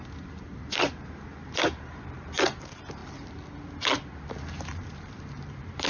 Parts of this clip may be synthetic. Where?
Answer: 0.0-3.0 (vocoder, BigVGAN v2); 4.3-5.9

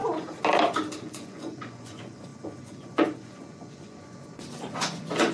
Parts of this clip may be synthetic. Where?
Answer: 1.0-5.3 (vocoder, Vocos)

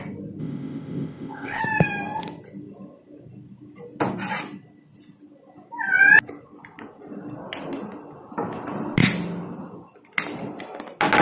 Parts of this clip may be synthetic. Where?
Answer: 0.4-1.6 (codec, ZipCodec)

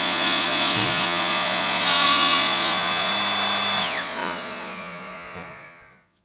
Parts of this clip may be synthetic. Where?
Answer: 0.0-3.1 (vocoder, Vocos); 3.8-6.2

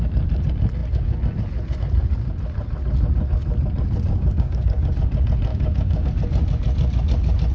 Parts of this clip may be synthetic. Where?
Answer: 4.1-4.9 (codec, DAC); 5.5-6.1